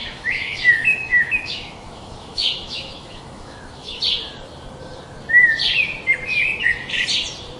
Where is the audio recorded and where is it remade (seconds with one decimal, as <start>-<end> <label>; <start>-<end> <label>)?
0.0-4.0 remade; 4.0-7.6 recorded